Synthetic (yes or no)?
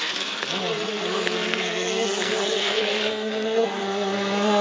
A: yes